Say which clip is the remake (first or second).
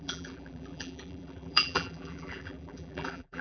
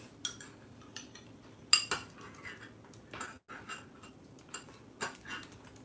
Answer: first